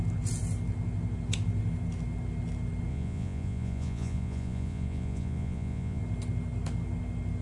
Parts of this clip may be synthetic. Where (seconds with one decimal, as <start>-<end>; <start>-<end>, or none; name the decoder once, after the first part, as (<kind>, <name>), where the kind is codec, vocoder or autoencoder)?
2.9-6.0 (vocoder, Vocos)